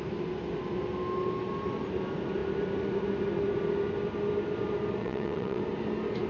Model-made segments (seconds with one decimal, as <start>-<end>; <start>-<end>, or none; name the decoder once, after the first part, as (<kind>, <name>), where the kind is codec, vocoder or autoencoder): 5.0-5.6 (vocoder, WaveNeXt)